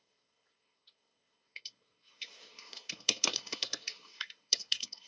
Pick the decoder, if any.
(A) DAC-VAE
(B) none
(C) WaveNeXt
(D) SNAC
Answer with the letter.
D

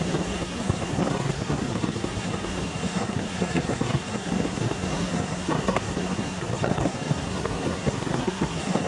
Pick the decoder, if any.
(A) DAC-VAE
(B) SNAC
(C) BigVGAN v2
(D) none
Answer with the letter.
B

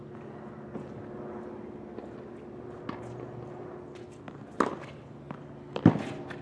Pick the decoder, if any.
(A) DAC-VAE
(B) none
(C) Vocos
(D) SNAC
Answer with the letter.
B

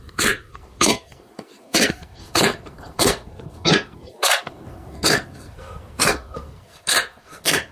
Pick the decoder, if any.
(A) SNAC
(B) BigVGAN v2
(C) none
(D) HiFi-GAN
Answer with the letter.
A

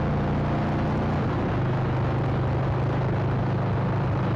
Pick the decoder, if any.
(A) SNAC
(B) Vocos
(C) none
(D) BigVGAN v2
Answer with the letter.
C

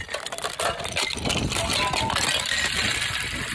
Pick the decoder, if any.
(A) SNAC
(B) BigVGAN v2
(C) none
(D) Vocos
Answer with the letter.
C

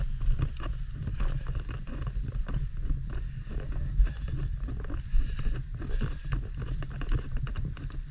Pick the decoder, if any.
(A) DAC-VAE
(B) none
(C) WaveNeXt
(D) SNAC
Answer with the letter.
B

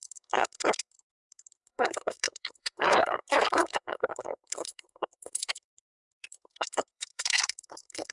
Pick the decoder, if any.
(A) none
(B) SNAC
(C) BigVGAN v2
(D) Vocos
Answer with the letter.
B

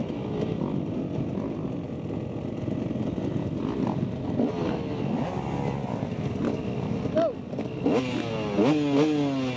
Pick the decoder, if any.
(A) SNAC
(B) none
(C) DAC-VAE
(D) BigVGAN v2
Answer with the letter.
B